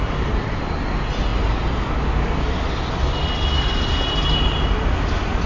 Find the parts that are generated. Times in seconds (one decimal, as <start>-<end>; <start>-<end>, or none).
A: none